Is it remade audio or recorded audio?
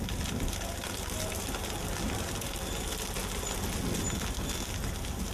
recorded